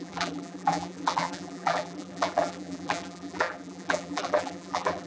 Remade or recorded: remade